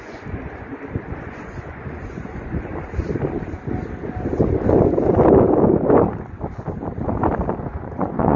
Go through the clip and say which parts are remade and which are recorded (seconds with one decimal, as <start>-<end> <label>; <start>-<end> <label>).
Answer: 0.0-0.7 remade; 0.7-1.2 recorded; 1.2-2.7 remade; 2.7-7.7 recorded; 7.7-8.4 remade